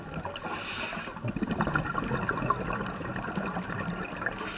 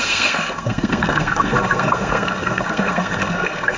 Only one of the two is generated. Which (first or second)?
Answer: second